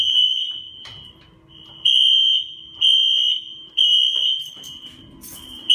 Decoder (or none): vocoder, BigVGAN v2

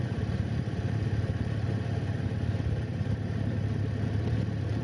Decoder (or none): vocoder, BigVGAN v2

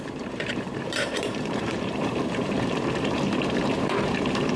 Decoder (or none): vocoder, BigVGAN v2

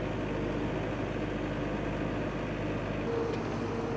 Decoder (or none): none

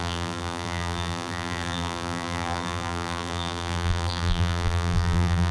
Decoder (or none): vocoder, BigVGAN v2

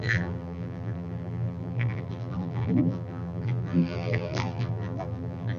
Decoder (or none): vocoder, BigVGAN v2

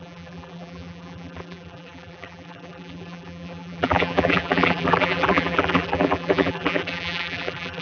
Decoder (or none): vocoder, BigVGAN v2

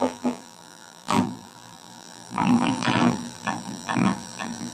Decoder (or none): vocoder, BigVGAN v2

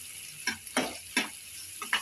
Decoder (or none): vocoder, BigVGAN v2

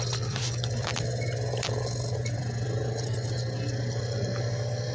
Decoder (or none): vocoder, BigVGAN v2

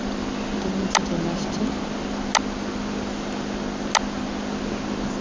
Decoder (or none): none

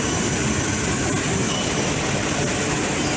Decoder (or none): none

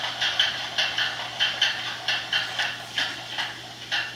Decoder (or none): none